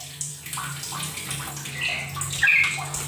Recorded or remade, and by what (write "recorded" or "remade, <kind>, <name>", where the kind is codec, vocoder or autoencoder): recorded